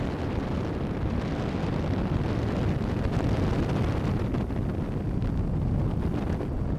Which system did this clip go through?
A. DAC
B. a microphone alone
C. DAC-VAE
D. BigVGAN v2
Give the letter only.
D